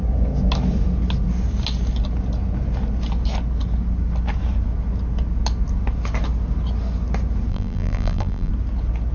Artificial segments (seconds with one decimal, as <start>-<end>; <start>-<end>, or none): 7.5-8.5